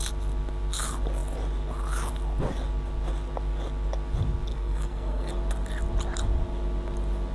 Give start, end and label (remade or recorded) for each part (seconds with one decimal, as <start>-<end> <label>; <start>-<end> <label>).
0.0-4.5 recorded; 4.5-5.3 remade; 5.3-7.3 recorded